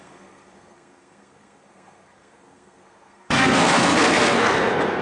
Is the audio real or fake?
fake